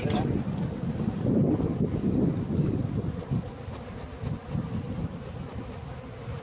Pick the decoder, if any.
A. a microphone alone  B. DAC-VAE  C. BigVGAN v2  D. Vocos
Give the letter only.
A